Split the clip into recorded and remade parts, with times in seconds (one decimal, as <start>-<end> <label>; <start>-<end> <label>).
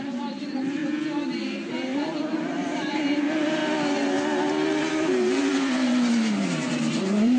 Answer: 0.0-0.8 remade; 0.8-1.4 recorded; 1.4-3.6 remade; 3.6-4.9 recorded; 4.9-7.4 remade